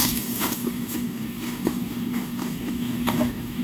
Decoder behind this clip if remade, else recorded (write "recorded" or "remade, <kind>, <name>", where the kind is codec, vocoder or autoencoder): remade, codec, DAC